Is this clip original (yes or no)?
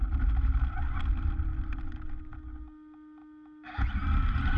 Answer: yes